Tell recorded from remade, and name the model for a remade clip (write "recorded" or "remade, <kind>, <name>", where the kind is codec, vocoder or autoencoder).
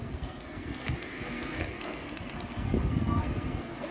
remade, codec, SNAC